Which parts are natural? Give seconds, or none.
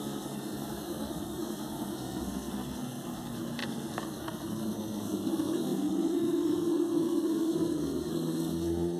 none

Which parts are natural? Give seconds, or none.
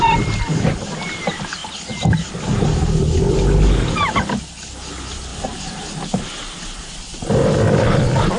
0.0-8.4